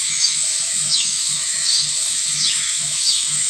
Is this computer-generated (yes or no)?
yes